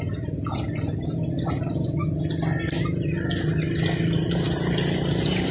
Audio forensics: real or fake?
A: real